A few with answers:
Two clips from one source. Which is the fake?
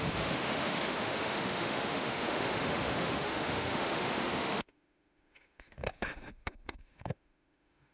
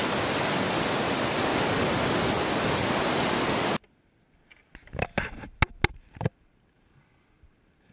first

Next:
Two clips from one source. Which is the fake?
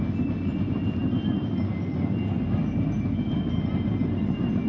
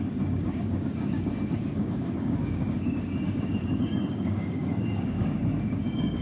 second